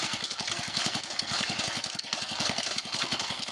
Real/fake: fake